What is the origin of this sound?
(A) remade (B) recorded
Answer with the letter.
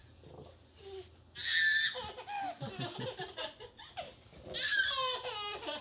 B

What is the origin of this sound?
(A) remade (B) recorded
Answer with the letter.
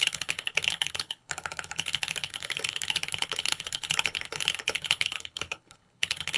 A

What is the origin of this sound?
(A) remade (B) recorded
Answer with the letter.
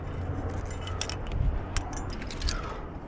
B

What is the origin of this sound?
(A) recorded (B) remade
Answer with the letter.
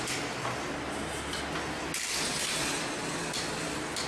A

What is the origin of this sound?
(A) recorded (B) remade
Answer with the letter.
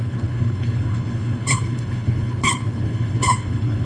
B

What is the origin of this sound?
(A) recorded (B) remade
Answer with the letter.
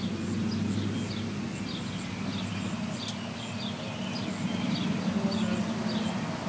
A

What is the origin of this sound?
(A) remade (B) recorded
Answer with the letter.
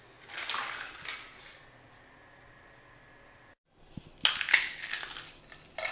B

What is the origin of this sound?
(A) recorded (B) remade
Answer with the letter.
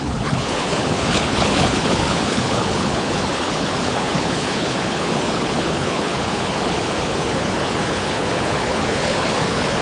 B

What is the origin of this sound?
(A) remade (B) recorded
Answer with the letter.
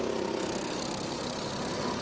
B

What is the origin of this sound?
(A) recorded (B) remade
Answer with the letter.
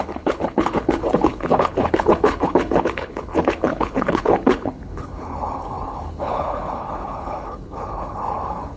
B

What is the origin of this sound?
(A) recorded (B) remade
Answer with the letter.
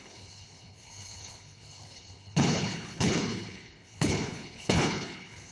B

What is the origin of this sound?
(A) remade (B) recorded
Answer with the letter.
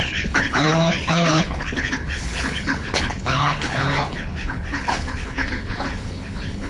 A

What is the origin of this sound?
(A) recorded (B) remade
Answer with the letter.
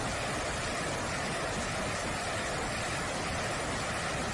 A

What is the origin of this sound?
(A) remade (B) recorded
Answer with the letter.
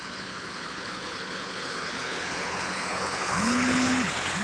A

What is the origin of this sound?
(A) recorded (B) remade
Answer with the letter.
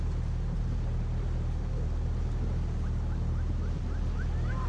A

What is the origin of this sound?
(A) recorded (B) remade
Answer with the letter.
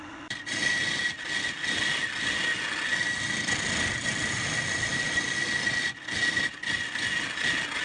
A